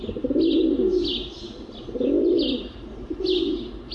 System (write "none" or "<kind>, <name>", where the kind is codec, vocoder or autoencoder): none